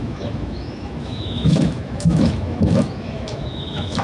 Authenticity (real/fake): fake